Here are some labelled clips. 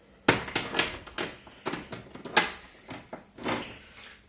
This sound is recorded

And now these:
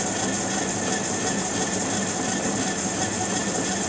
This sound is recorded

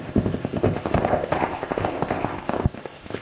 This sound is remade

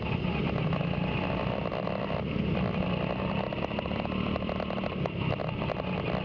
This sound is recorded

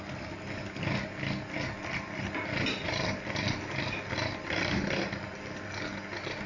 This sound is recorded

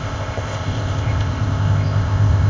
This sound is remade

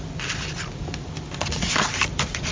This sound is recorded